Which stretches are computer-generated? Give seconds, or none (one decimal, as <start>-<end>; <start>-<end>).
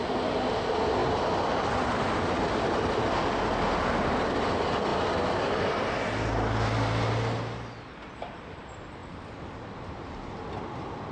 none